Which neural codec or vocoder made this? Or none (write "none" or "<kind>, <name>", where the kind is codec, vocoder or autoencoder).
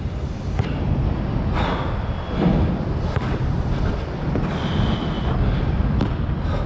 none